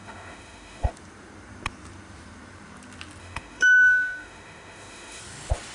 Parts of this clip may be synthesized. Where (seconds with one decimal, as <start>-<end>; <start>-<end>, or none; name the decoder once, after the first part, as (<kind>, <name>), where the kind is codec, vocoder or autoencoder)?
0.0-0.9 (autoencoder, DAC-VAE); 3.2-5.2